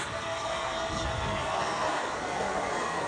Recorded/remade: remade